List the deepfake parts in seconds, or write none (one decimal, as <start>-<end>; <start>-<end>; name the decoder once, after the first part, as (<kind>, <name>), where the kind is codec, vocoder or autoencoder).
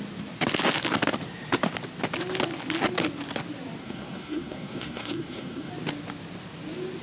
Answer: 3.8-5.7 (codec, SNAC)